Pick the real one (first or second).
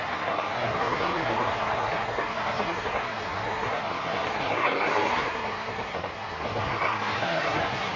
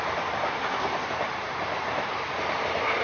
second